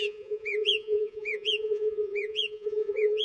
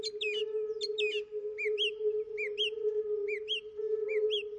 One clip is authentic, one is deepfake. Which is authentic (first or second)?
second